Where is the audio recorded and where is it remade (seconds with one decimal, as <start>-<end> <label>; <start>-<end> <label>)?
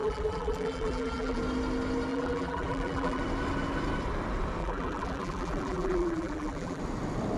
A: 0.0-1.4 remade; 1.4-2.1 recorded; 2.1-3.2 remade; 3.2-4.6 recorded; 4.6-6.8 remade; 6.8-7.4 recorded